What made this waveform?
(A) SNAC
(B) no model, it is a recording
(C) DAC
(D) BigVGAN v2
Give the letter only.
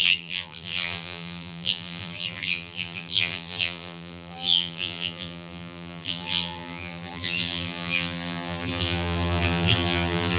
D